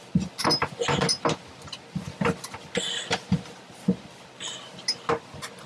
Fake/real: real